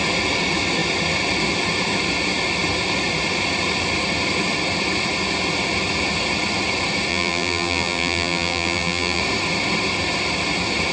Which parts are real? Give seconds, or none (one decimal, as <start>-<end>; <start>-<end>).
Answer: 0.0-7.1; 9.2-10.9

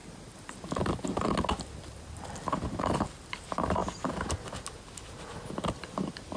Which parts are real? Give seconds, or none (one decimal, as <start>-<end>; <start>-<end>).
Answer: 0.0-6.4